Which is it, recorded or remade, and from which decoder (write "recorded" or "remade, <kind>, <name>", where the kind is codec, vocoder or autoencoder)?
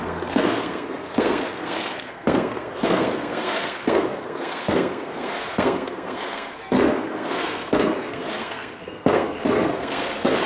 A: remade, codec, SNAC